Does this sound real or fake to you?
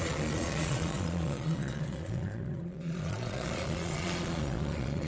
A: fake